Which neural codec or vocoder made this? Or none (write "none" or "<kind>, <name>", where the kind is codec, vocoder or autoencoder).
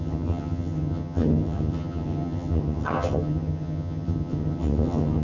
vocoder, HiFi-GAN